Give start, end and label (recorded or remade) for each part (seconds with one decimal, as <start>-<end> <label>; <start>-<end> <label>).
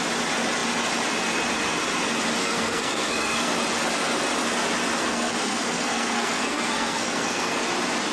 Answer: 0.0-2.4 recorded; 2.4-3.5 remade; 3.5-5.0 recorded; 5.0-7.6 remade; 7.6-8.1 recorded